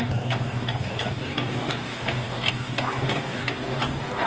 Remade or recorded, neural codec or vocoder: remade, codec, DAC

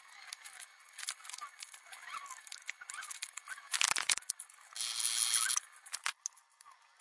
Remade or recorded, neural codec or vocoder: recorded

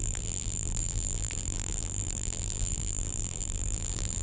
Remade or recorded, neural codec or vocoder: remade, vocoder, BigVGAN v2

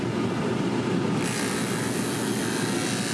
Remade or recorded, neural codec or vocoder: recorded